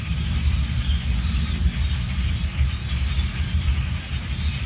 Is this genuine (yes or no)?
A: yes